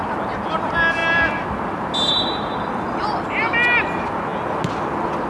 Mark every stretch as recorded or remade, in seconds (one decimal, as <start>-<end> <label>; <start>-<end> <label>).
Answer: 0.0-5.3 recorded